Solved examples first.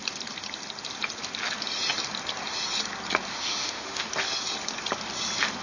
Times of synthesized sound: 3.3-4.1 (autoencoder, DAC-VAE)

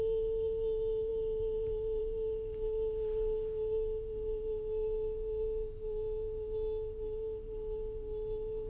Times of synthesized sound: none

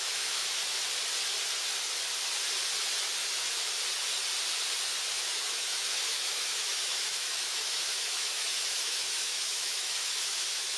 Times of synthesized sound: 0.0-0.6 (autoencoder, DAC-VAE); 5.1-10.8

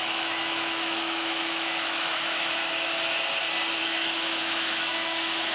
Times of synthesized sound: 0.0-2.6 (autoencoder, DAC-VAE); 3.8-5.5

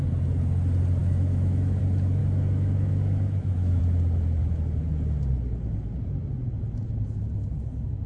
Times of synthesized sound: 1.0-1.8 (autoencoder, DAC-VAE); 2.2-3.8

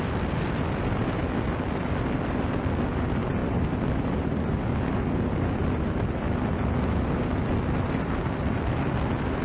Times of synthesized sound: none